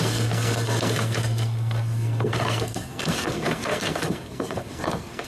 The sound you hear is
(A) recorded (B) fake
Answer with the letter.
B